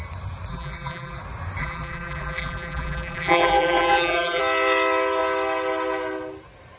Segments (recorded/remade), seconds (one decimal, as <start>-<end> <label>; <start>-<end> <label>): 0.0-0.5 recorded; 0.5-1.2 remade; 1.2-1.6 recorded; 1.6-4.4 remade; 4.4-6.8 recorded